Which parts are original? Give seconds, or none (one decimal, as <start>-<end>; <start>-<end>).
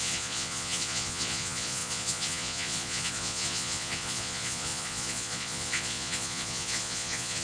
none